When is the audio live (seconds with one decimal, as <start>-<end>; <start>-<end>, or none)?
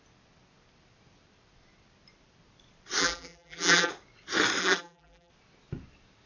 0.0-3.0; 3.9-4.6; 5.3-6.3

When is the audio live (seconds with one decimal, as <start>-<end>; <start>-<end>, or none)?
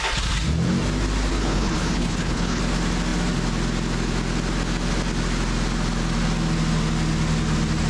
0.0-1.3; 2.6-7.9